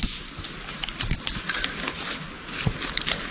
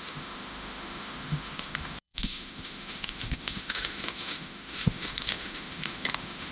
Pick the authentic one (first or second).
first